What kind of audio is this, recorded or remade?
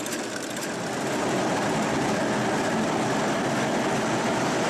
recorded